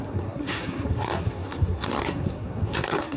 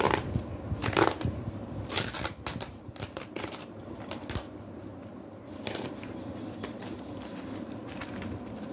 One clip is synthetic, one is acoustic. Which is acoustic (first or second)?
second